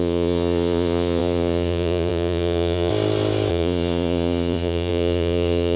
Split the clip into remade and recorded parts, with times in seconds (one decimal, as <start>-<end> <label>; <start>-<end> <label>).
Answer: 0.0-2.9 remade; 2.9-3.5 recorded; 3.5-5.8 remade

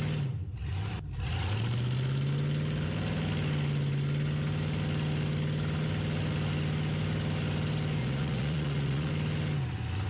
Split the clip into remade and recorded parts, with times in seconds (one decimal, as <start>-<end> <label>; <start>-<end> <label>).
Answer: 0.0-8.0 recorded; 8.0-9.1 remade; 9.1-10.1 recorded